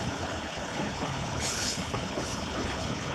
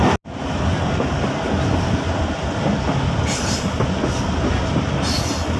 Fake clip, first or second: first